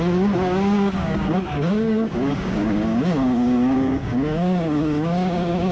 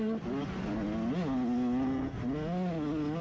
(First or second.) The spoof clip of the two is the first